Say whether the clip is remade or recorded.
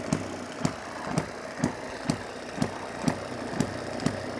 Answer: recorded